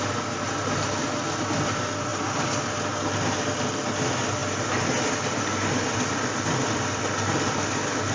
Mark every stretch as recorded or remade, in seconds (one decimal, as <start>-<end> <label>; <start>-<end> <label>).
0.0-8.1 recorded